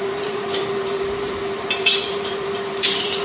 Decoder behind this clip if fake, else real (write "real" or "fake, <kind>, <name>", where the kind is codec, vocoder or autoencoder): fake, vocoder, BigVGAN v2